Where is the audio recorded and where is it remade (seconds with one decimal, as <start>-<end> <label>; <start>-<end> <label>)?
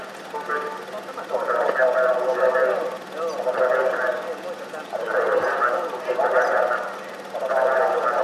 0.0-1.8 recorded; 1.8-2.5 remade; 2.5-8.2 recorded